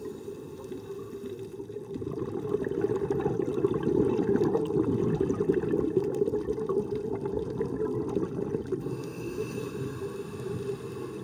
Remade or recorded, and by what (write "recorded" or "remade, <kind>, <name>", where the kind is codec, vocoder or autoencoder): recorded